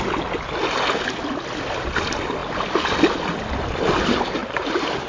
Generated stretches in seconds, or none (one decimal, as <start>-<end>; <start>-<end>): 4.4-5.1